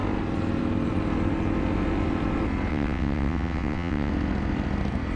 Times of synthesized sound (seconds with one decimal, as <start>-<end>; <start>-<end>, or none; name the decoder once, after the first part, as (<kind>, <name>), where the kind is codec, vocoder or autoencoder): 2.7-4.1 (vocoder, WaveNeXt)